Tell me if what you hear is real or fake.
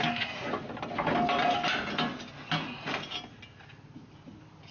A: real